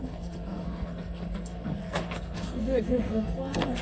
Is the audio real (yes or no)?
no